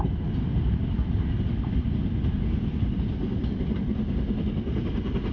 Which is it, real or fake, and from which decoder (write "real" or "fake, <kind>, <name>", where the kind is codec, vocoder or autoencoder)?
real